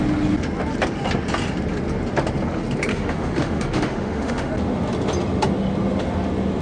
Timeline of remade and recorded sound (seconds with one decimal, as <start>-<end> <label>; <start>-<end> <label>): 0.0-2.9 recorded; 2.9-4.5 remade; 4.5-6.6 recorded